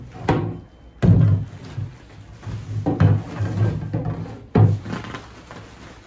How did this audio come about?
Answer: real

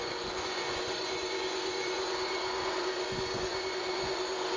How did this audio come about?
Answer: fake